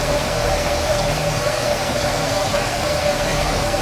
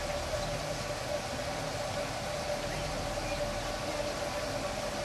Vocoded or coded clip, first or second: first